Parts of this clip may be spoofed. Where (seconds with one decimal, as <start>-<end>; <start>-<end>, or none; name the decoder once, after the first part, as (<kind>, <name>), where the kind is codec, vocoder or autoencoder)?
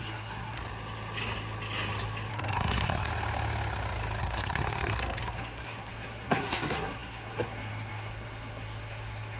0.0-0.6 (codec, SNAC); 2.3-3.1; 4.2-9.4